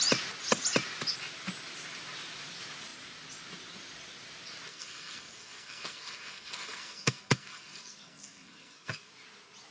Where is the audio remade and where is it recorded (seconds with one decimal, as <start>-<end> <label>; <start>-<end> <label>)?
0.0-4.7 recorded; 4.7-9.1 remade; 9.1-9.7 recorded